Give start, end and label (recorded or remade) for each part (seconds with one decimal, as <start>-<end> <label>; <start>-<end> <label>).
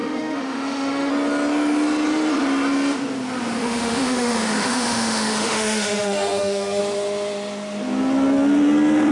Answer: 0.0-1.1 remade; 1.1-3.6 recorded; 3.6-6.8 remade; 6.8-9.1 recorded